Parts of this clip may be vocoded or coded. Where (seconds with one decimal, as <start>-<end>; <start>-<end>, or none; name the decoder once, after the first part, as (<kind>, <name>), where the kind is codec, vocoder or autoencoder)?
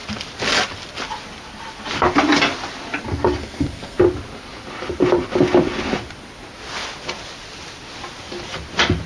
3.4-4.0 (codec, SNAC)